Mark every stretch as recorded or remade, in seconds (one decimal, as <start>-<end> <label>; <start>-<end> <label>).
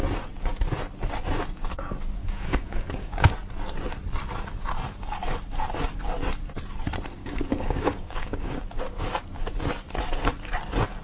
0.0-2.2 recorded; 2.2-3.3 remade; 3.3-7.2 recorded; 7.2-8.6 remade; 8.6-11.0 recorded